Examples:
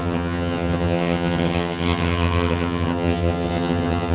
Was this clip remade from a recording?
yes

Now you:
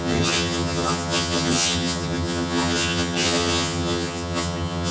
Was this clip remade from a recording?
yes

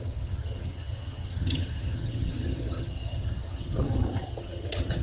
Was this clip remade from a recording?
yes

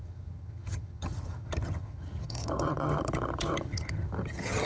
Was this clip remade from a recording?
yes